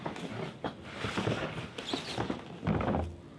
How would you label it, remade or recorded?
recorded